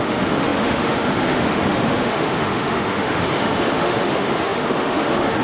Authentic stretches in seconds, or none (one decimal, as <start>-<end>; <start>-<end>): none